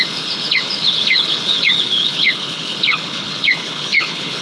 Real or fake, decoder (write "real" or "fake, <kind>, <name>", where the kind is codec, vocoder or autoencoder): fake, codec, HILCodec